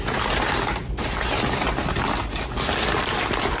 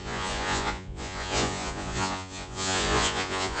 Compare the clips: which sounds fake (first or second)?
second